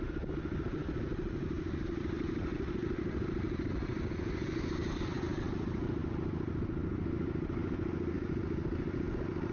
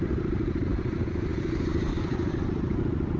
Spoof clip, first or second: second